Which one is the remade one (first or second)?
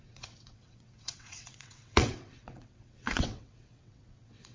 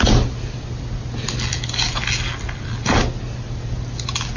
first